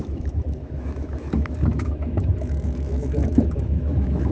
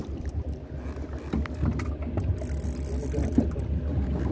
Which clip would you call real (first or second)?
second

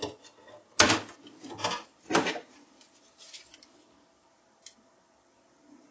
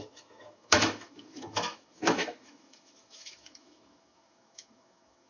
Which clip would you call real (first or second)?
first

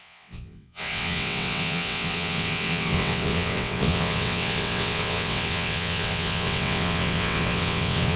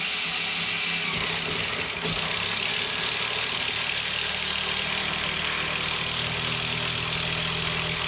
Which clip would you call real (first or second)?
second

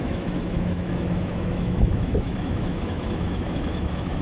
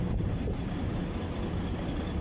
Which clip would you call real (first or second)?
second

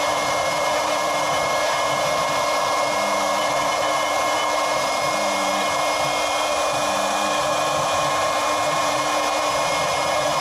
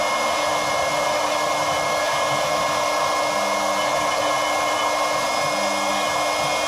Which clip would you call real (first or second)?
second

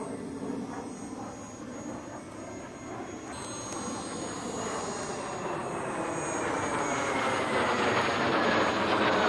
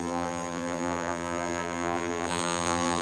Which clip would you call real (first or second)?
first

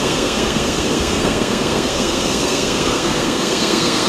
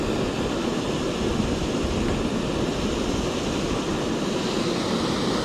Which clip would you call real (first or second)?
second